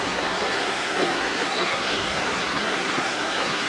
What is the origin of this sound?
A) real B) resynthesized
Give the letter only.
B